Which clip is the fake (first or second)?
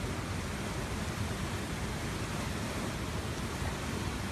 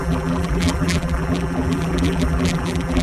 second